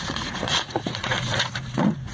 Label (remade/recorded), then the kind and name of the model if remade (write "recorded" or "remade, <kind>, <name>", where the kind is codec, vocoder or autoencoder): remade, vocoder, Vocos